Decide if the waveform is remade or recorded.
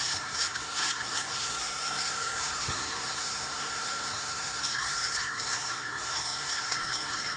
remade